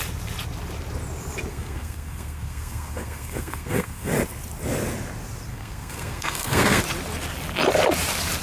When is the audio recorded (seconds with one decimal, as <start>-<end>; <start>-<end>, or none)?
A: 0.0-1.5; 4.1-5.5; 6.8-8.4